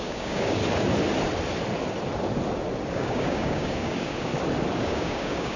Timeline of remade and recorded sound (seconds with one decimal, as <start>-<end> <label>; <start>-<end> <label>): 0.0-0.6 remade; 0.6-2.9 recorded; 2.9-4.3 remade; 4.3-4.8 recorded; 4.8-5.6 remade